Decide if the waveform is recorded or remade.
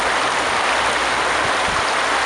recorded